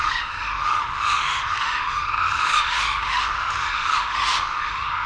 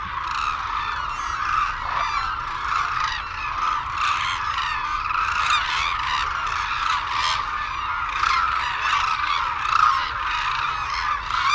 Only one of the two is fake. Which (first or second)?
first